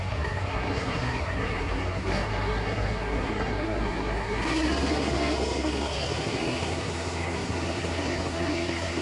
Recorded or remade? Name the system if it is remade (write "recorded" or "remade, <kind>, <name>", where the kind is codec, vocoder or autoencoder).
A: remade, codec, SNAC